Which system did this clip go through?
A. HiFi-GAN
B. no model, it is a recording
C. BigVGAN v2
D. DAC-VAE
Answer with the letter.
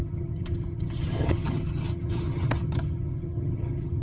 A